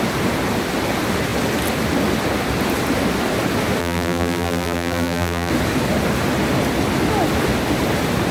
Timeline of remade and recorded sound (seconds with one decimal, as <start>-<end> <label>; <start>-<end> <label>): 0.0-3.8 recorded; 3.8-5.5 remade; 5.5-8.3 recorded